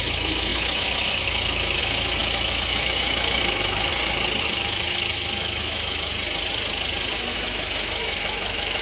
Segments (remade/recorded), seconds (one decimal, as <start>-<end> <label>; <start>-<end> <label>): 0.0-3.9 remade; 3.9-4.4 recorded; 4.4-6.1 remade; 6.1-7.1 recorded; 7.1-8.8 remade